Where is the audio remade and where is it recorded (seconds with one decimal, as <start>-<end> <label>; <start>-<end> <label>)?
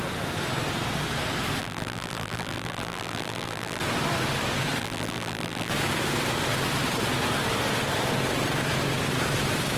0.0-1.6 recorded; 1.6-3.8 remade; 3.8-4.8 recorded; 4.8-5.7 remade; 5.7-9.8 recorded